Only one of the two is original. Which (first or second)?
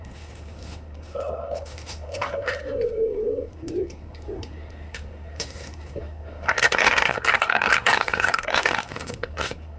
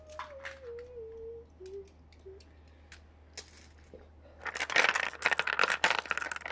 second